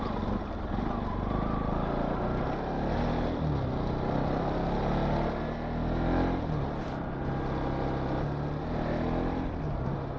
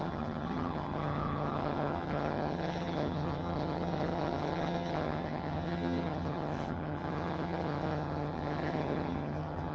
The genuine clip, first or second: first